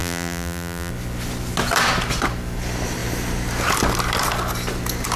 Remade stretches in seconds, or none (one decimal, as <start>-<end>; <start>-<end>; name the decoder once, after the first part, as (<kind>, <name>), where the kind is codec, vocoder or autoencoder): 0.0-0.9 (vocoder, BigVGAN v2)